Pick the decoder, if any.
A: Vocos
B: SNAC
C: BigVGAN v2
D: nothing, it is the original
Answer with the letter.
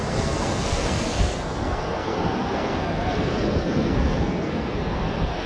B